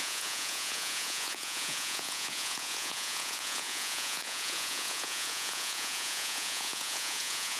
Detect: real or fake fake